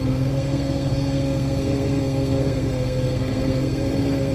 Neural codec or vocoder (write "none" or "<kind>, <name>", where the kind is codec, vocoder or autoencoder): codec, SNAC